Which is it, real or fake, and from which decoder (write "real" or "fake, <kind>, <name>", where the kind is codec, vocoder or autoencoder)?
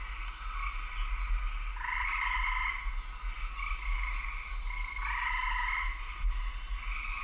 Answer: real